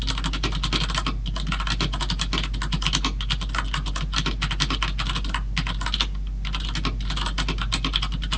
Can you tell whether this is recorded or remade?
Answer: recorded